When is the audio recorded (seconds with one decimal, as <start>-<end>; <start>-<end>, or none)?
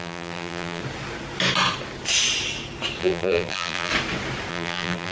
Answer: 0.8-3.0; 3.9-4.5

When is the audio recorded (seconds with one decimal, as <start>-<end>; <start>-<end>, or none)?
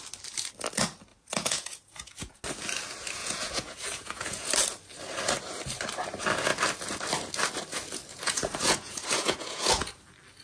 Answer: 0.0-1.1; 2.4-3.2; 4.5-8.1; 9.9-10.4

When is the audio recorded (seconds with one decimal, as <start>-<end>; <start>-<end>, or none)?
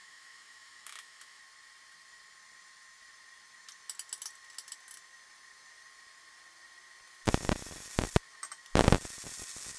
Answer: 1.4-9.8